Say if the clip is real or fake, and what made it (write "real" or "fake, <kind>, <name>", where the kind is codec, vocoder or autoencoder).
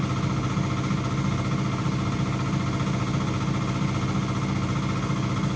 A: real